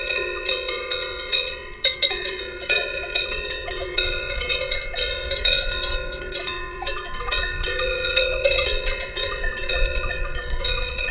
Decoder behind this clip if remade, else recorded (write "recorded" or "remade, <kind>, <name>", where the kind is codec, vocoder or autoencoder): remade, vocoder, WaveNeXt